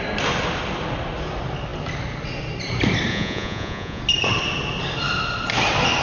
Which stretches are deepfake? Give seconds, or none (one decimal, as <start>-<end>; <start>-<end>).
3.1-4.0